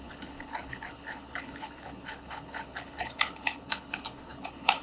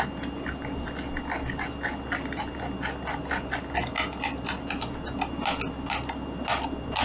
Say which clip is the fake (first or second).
first